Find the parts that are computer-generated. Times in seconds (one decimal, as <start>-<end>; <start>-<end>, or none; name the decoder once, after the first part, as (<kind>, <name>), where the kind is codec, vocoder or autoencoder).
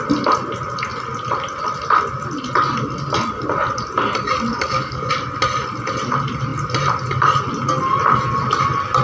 4.5-5.1 (codec, DAC)